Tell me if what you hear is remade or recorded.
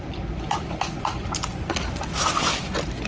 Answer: recorded